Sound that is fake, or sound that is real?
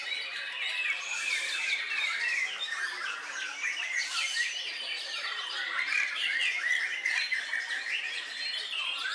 fake